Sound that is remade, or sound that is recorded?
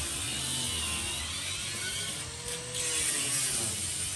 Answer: recorded